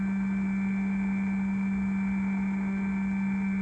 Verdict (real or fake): real